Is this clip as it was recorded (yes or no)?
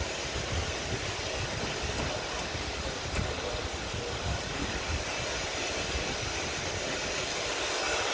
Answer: yes